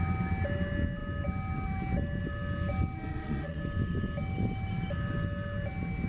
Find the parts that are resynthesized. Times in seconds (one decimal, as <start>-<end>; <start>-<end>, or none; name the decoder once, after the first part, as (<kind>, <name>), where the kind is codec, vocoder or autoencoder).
3.1-3.6 (vocoder, Vocos)